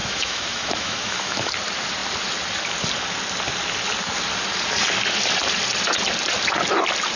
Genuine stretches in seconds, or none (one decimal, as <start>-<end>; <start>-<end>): 1.5-7.2

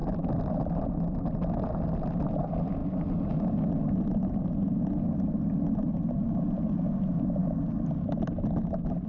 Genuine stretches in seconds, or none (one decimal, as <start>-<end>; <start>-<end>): 0.0-9.1

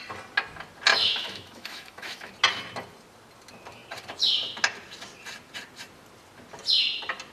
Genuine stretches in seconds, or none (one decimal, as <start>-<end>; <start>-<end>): 0.0-0.9; 2.3-7.3

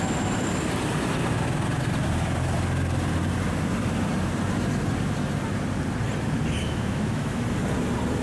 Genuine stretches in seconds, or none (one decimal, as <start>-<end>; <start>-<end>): 0.0-6.6; 7.4-8.2

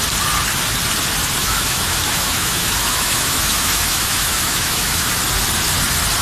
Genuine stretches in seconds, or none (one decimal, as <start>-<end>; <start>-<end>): 0.0-1.4; 5.1-6.2

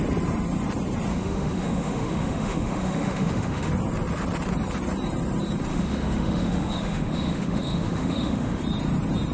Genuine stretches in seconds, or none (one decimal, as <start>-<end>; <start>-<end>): 0.0-1.1; 3.7-5.7; 8.6-9.3

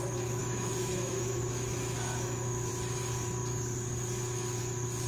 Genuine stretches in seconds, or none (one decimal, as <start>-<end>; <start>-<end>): 0.0-0.4; 2.7-5.1